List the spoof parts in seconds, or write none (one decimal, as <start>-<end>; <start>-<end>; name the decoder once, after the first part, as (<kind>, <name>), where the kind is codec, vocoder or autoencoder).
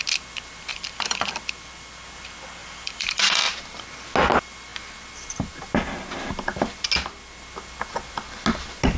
0.7-1.3 (vocoder, BigVGAN v2); 2.6-3.4